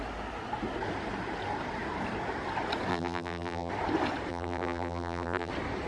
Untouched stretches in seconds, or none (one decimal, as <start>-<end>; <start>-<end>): 0.0-2.9; 3.7-4.3; 5.5-5.9